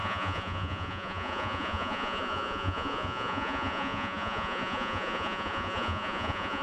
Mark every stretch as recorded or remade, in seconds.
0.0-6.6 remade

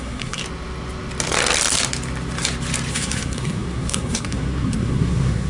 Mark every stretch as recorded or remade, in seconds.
0.0-0.4 remade; 0.4-2.9 recorded; 2.9-5.5 remade

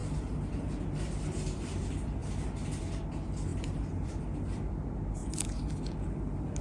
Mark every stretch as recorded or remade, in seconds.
0.0-3.5 recorded; 3.5-4.2 remade; 4.2-6.6 recorded